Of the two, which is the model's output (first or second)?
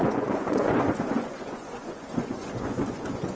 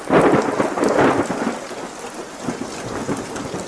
first